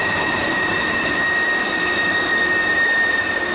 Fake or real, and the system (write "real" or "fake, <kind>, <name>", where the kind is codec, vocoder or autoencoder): fake, vocoder, BigVGAN v2